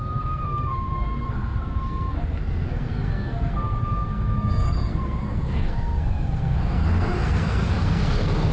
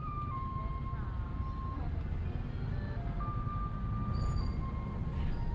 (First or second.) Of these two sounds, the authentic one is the second